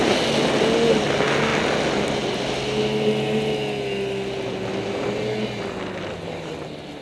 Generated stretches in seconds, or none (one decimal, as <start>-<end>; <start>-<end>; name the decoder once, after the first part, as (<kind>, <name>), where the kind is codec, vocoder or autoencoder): none